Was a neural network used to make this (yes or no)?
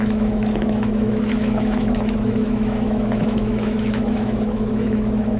yes